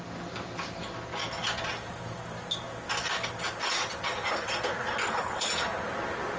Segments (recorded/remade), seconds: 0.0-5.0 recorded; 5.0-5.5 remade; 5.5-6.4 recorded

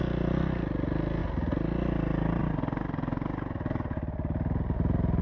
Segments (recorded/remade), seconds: 0.0-5.2 recorded

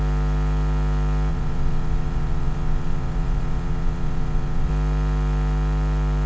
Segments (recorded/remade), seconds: 0.0-1.3 recorded; 1.3-4.7 remade; 4.7-6.3 recorded

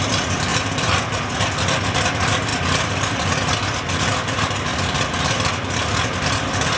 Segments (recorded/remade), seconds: 0.0-6.8 recorded

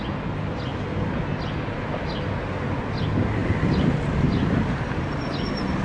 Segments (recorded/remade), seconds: 0.0-3.4 recorded; 3.4-3.9 remade; 3.9-5.8 recorded

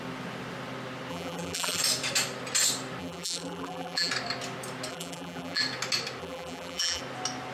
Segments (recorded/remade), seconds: 0.0-1.1 recorded; 1.1-1.8 remade; 1.8-3.0 recorded; 3.0-4.1 remade; 4.1-4.9 recorded; 4.9-5.6 remade; 5.6-6.2 recorded; 6.2-7.0 remade; 7.0-7.5 recorded